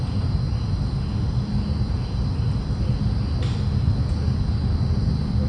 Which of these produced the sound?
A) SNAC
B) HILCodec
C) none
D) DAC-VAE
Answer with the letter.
C